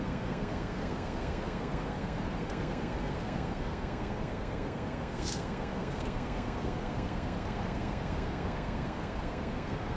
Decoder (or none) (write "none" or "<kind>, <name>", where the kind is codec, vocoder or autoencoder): codec, SNAC